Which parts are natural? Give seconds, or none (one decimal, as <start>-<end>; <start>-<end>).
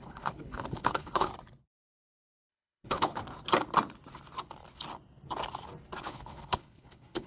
1.3-2.5; 3.2-6.0